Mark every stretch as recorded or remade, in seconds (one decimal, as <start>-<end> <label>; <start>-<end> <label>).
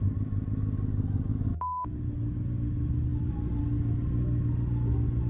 0.0-5.3 recorded